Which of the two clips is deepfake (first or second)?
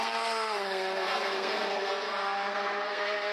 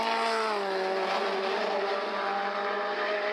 first